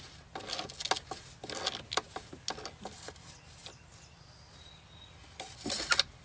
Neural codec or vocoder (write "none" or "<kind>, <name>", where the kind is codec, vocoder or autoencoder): none